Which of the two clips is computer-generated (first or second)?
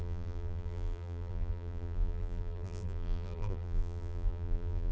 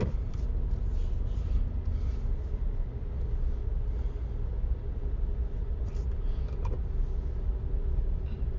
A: first